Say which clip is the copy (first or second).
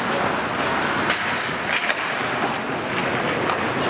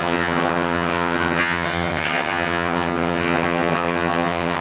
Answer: second